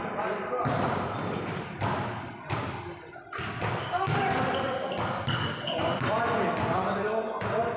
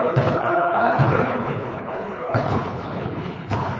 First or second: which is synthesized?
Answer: second